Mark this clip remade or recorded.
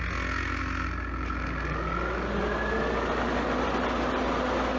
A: recorded